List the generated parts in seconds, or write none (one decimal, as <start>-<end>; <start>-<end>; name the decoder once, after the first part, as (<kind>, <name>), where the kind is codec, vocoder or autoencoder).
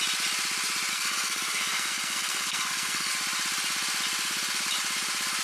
0.9-3.1 (codec, SNAC)